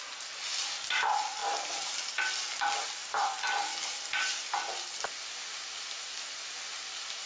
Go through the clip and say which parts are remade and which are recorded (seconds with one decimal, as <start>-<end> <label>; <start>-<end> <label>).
0.0-1.4 recorded; 1.4-2.1 remade; 2.1-7.3 recorded